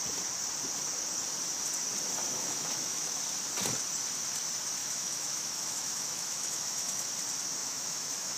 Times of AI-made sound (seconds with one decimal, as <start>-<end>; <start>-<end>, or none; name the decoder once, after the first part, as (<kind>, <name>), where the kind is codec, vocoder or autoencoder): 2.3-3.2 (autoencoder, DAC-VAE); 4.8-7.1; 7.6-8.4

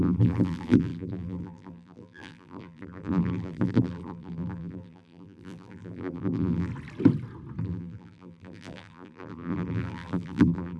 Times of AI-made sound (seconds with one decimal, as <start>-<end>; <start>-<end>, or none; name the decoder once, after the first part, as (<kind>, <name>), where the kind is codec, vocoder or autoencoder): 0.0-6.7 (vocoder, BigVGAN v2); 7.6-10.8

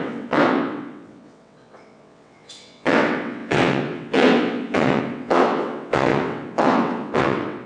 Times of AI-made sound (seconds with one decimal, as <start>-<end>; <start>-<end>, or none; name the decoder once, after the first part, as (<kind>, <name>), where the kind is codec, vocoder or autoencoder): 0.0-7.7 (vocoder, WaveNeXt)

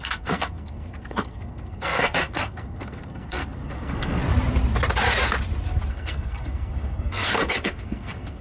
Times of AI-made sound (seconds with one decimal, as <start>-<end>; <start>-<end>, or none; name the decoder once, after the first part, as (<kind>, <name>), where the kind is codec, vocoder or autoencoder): 0.0-4.2 (codec, SNAC); 5.9-8.4

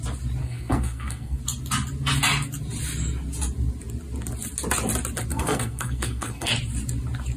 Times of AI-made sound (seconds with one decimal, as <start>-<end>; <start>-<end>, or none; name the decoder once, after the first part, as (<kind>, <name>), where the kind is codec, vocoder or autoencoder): 0.4-1.4 (codec, SNAC); 5.3-6.5